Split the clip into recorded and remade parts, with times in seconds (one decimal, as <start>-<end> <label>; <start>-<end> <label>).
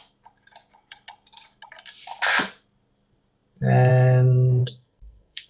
0.0-4.6 recorded; 4.6-5.5 remade